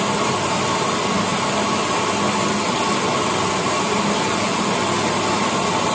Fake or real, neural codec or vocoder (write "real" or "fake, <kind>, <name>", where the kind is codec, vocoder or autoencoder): real